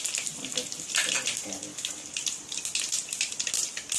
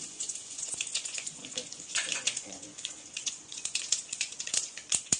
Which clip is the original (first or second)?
first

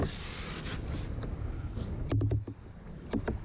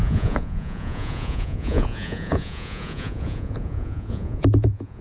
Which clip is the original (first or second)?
first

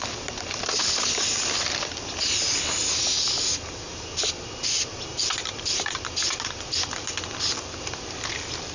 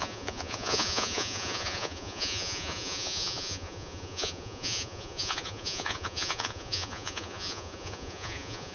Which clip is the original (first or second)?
first